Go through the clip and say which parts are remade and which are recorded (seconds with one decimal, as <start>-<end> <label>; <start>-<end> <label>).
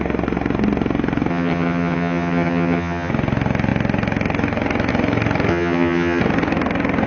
0.0-1.3 recorded; 1.3-3.1 remade; 3.1-5.5 recorded; 5.5-6.2 remade; 6.2-7.1 recorded